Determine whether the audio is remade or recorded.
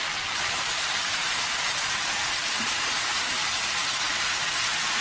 recorded